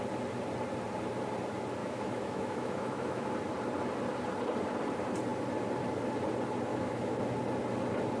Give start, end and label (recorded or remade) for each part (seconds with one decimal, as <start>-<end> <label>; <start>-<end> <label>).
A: 0.0-1.8 recorded; 1.8-3.3 remade; 3.3-6.7 recorded; 6.7-7.2 remade; 7.2-8.2 recorded